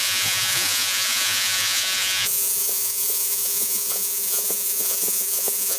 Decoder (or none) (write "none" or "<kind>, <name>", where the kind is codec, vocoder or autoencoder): vocoder, Vocos